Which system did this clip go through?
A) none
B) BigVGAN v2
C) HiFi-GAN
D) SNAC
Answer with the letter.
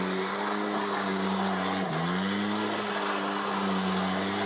A